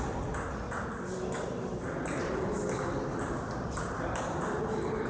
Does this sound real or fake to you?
real